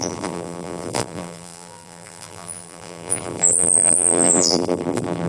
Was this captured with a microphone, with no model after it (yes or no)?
no